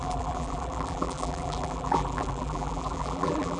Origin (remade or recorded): remade